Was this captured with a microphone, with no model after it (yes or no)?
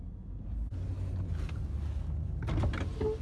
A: yes